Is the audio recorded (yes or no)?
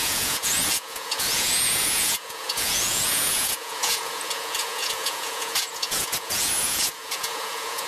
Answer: no